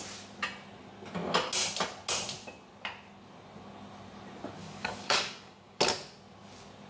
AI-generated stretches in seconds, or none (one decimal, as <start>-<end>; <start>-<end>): 4.6-5.8